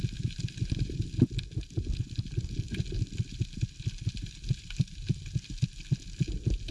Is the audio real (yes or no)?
yes